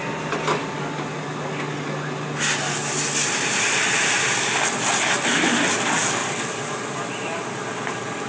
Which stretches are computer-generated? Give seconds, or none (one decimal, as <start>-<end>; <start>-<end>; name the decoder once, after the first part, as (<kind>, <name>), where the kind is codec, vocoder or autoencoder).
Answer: none